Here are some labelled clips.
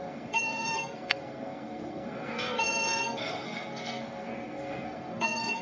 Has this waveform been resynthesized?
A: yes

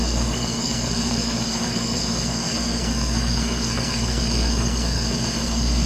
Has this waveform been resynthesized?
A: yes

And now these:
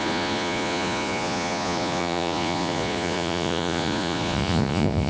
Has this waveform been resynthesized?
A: yes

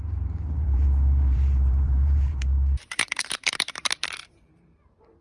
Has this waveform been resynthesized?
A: yes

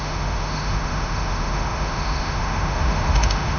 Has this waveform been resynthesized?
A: yes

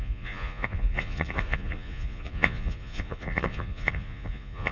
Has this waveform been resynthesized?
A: yes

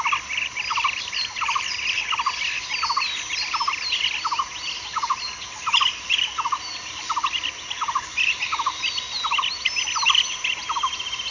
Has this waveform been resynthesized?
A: no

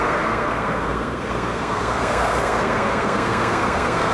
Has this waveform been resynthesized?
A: yes